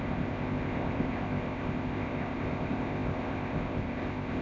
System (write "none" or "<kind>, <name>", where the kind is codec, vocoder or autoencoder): codec, ZipCodec